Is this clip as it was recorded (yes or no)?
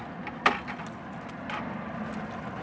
yes